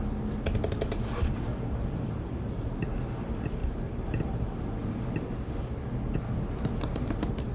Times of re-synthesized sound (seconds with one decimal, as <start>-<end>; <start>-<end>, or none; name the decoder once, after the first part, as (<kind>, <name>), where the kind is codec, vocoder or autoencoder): none